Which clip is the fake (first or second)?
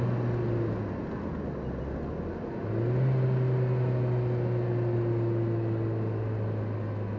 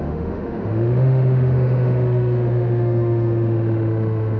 second